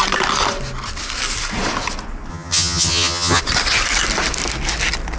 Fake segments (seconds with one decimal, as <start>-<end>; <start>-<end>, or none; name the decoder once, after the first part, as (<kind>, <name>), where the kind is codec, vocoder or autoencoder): 2.3-3.4 (vocoder, HiFi-GAN)